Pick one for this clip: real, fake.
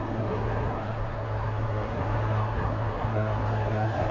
fake